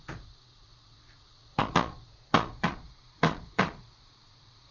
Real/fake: fake